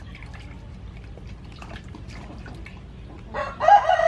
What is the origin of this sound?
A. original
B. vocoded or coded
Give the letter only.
A